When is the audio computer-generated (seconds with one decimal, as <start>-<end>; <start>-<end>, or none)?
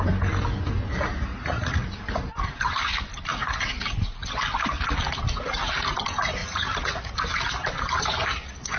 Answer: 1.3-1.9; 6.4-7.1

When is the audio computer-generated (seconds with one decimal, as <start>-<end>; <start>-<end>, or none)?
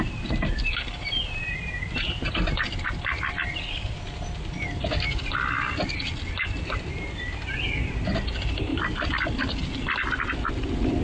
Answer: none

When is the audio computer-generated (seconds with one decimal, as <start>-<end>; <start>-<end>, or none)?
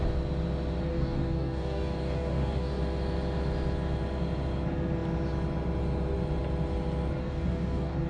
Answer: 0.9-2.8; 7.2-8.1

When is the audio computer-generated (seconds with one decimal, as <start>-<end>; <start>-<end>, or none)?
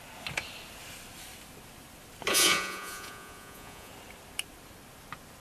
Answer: 2.3-3.9